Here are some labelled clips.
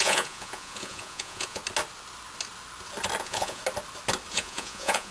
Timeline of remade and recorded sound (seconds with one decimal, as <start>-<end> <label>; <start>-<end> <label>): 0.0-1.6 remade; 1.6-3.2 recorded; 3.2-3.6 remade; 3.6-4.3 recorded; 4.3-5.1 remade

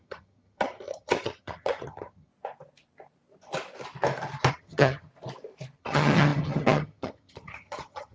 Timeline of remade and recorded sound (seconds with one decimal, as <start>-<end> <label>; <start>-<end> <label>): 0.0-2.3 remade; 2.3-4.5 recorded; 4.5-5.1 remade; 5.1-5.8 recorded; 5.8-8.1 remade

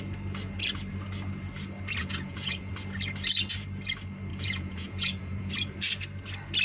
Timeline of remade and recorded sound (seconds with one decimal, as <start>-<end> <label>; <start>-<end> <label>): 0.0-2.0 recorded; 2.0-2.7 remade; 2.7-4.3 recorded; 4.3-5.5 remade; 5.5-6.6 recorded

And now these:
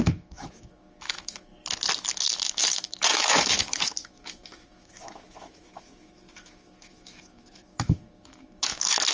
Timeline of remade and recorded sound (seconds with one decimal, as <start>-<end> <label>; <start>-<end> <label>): 0.0-1.5 remade; 1.5-2.1 recorded; 2.1-9.1 remade